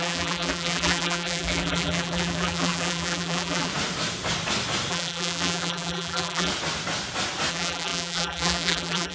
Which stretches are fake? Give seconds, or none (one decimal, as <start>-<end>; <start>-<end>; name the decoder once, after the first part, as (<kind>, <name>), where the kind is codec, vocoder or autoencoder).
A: 0.0-3.7 (vocoder, BigVGAN v2); 4.9-6.5; 7.5-9.1